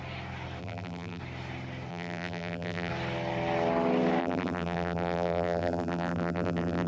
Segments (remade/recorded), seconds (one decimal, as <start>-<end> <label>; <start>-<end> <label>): 0.0-0.6 recorded; 0.6-1.2 remade; 1.2-1.9 recorded; 1.9-2.9 remade; 2.9-4.2 recorded; 4.2-6.9 remade